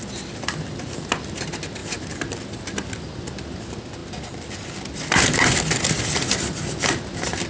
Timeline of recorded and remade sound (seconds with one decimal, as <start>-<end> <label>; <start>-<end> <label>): 0.0-7.5 recorded